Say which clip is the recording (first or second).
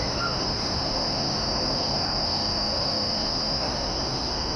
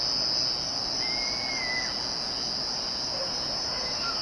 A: second